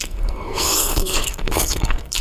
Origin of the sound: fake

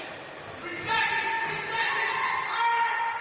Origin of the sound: real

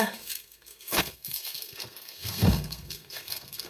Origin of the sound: fake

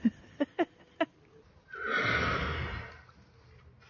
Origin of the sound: real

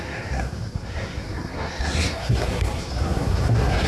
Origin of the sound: fake